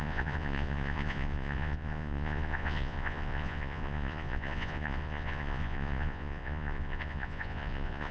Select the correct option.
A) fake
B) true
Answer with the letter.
A